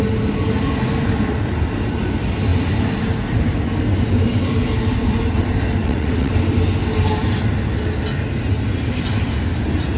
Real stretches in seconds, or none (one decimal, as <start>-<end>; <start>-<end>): 0.0-5.8; 6.3-10.0